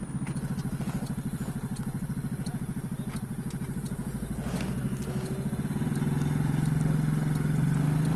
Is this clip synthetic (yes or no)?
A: no